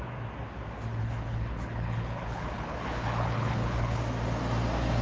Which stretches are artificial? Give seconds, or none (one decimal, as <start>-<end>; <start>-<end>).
1.0-4.0